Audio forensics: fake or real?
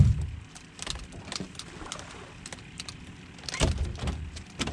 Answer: real